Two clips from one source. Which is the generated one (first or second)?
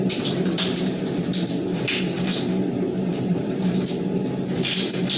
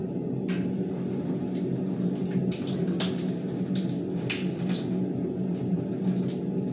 first